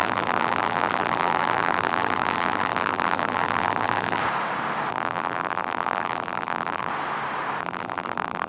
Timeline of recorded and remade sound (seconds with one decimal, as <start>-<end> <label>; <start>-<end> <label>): 0.0-4.2 remade; 4.2-4.9 recorded; 4.9-6.9 remade; 6.9-7.6 recorded; 7.6-8.5 remade

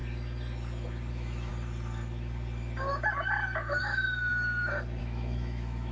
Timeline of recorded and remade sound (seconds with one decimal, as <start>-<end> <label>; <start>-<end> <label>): 0.0-1.1 recorded; 1.1-1.5 remade; 1.5-3.8 recorded; 3.8-4.3 remade; 4.3-5.0 recorded; 5.0-5.9 remade

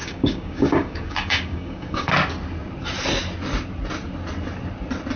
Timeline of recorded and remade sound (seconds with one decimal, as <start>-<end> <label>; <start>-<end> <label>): 0.0-2.1 remade; 2.1-5.2 recorded

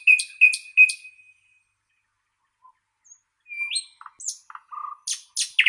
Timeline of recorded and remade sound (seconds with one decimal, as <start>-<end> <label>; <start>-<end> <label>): 0.0-5.7 recorded

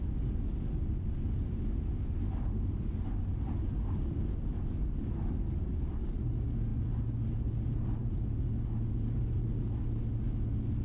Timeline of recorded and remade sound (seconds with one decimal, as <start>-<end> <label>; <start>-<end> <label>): 0.0-10.8 recorded

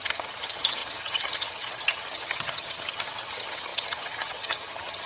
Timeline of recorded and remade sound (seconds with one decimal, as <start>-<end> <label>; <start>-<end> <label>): 0.0-5.1 remade